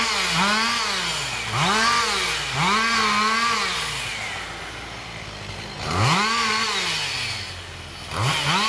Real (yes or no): yes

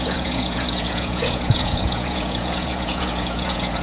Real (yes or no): no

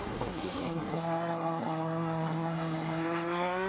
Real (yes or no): no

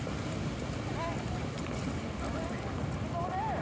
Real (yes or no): yes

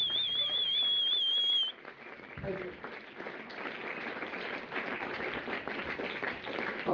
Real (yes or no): no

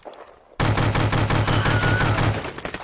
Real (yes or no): yes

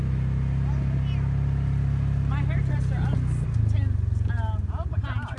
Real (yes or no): yes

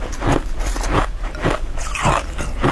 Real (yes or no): yes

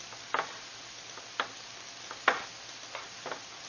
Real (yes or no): yes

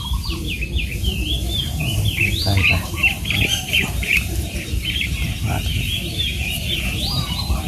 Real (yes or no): no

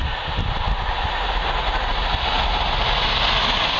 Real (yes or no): yes